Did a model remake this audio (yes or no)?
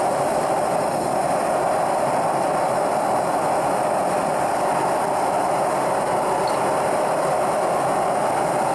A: no